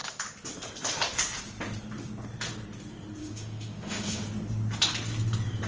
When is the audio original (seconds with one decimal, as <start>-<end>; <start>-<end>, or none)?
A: 0.0-3.2; 4.2-5.7